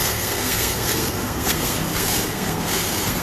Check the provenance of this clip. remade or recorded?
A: remade